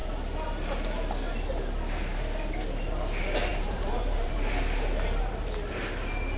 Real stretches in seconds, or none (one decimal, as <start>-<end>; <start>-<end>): 0.0-3.5; 4.5-6.4